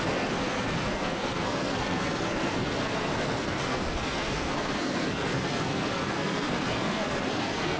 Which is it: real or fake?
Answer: fake